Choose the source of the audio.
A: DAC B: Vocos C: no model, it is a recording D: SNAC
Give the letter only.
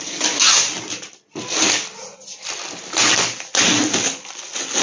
C